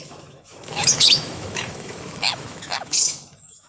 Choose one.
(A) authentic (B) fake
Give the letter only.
B